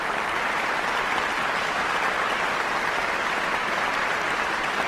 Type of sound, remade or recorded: recorded